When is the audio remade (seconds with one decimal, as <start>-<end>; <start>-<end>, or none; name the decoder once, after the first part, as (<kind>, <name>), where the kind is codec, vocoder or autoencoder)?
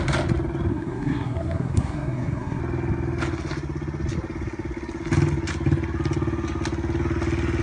0.7-2.6 (codec, SNAC)